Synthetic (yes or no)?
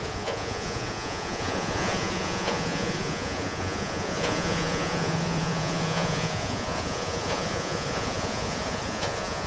yes